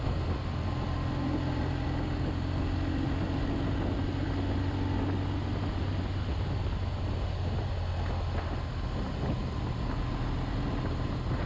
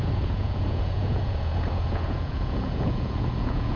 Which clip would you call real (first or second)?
first